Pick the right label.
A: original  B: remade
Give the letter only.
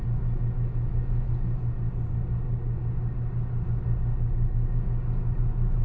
A